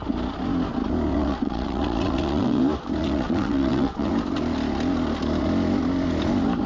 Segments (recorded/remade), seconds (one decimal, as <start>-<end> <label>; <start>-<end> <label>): 0.0-1.1 recorded; 1.1-2.6 remade; 2.6-3.0 recorded; 3.0-4.1 remade; 4.1-6.7 recorded